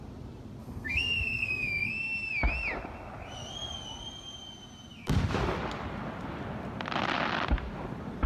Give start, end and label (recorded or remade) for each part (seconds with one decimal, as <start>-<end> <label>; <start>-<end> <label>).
0.0-0.6 recorded; 0.6-1.9 remade; 1.9-8.3 recorded